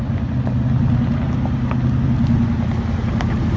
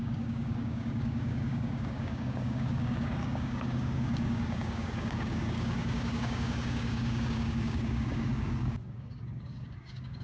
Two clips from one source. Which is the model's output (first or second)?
second